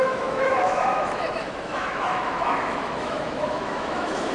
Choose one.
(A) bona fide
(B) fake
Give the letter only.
B